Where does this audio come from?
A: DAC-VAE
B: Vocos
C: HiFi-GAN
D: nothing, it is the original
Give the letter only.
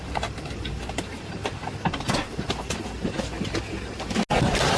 D